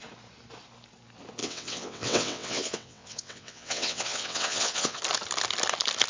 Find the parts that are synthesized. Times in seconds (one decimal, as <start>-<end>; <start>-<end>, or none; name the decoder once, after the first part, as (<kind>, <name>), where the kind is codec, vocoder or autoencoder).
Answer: 1.4-5.0 (vocoder, WaveNeXt)

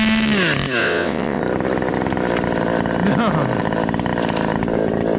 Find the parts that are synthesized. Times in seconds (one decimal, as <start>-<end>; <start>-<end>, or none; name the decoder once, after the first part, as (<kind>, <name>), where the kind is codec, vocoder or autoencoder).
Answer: 0.8-1.4 (vocoder, WaveNeXt)

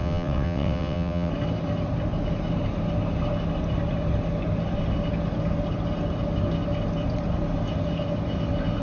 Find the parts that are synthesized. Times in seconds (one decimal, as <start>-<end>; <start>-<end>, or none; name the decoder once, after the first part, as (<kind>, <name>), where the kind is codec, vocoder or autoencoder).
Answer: 0.0-1.3 (vocoder, WaveNeXt)

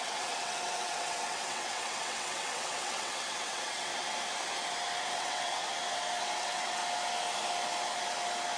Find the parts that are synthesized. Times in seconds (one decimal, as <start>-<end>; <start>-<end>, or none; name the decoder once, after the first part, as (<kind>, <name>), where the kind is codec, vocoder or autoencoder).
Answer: 0.0-3.9 (vocoder, WaveNeXt); 5.0-5.6; 6.2-6.8

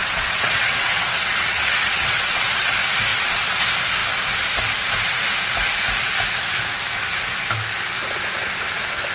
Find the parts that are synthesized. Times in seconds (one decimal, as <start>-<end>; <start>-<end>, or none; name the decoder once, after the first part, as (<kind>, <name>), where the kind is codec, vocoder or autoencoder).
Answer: 0.0-2.7 (vocoder, WaveNeXt); 3.1-3.6

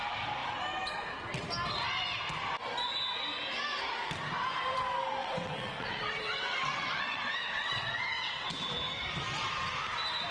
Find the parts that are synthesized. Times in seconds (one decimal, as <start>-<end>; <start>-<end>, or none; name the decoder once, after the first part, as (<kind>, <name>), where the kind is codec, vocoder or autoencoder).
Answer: 5.2-8.5 (vocoder, WaveNeXt)

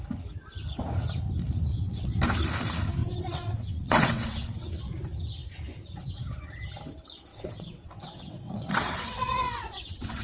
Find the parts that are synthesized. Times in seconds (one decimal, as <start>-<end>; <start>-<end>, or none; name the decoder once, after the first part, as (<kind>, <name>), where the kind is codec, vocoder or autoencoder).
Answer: 1.7-2.2 (vocoder, WaveNeXt); 3.0-4.9; 7.3-10.2